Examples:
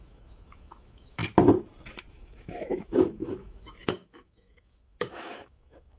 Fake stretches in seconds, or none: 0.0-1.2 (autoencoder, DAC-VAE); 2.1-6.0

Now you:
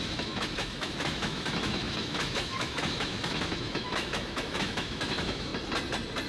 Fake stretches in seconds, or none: 0.0-5.5 (autoencoder, DAC-VAE)

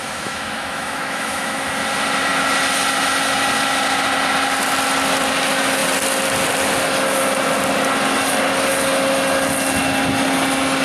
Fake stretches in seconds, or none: 0.0-1.7 (autoencoder, DAC-VAE)

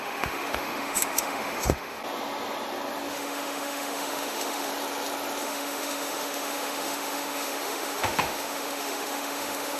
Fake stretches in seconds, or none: 0.0-2.0 (autoencoder, DAC-VAE); 3.1-4.7; 5.4-9.8